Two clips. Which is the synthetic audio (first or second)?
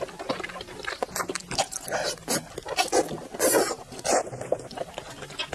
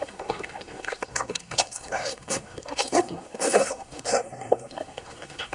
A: second